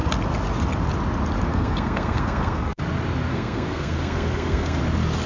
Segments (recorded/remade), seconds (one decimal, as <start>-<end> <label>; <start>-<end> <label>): 0.0-1.5 recorded; 1.5-2.8 remade; 2.8-3.3 recorded; 3.3-4.8 remade; 4.8-5.3 recorded